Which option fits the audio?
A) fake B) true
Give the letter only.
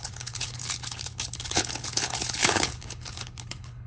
A